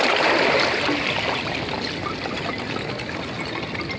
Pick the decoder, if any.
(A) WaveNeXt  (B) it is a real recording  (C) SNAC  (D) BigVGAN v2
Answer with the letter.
B